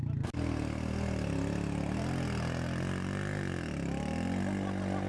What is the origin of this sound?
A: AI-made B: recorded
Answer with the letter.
B